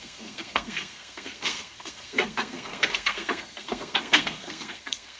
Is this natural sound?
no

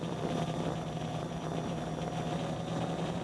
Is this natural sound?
no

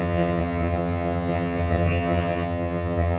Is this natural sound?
no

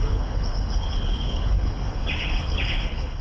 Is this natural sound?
no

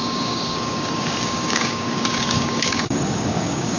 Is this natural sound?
no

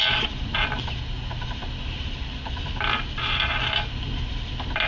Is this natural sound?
yes